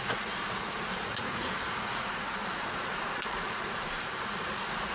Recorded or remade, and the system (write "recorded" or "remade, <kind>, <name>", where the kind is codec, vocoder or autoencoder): remade, vocoder, Vocos